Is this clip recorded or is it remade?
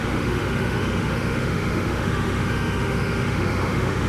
remade